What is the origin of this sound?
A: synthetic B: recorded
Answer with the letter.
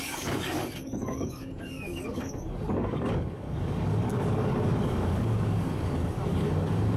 A